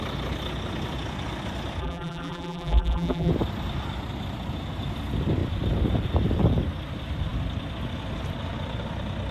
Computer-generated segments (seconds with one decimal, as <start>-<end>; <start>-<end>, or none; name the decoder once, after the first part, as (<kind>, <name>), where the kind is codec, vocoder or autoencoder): 1.8-3.3 (vocoder, BigVGAN v2)